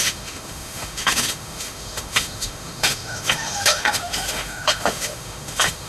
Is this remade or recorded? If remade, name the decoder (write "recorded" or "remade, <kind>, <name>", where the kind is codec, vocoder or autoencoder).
remade, autoencoder, DAC-VAE